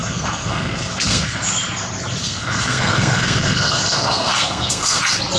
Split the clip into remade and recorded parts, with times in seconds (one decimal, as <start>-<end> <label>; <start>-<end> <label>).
0.0-1.5 remade; 1.5-2.2 recorded; 2.2-5.0 remade; 5.0-5.4 recorded